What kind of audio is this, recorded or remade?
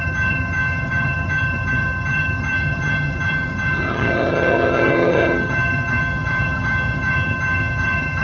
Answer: remade